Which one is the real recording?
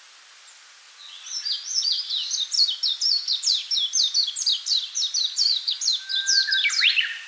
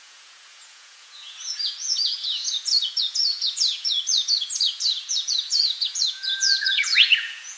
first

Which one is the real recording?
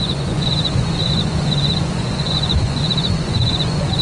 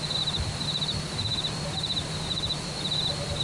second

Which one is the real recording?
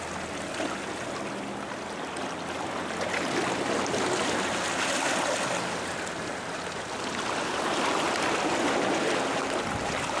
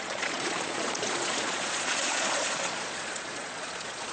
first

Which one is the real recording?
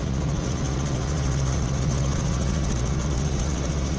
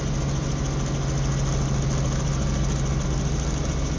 second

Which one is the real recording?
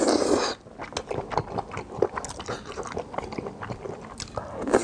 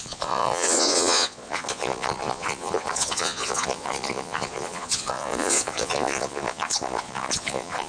first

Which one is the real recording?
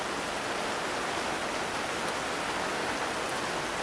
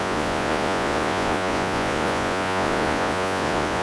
first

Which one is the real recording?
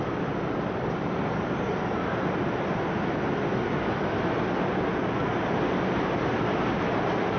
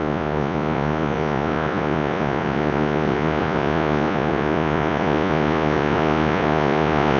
first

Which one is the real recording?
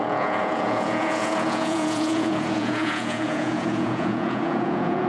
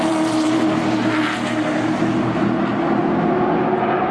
second